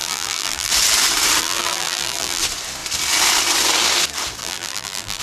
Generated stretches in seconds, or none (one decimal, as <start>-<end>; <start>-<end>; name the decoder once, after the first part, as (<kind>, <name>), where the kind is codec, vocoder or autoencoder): 0.0-0.7 (vocoder, BigVGAN v2); 1.4-2.4; 4.4-5.2